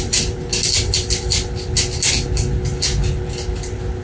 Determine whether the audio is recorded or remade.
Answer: recorded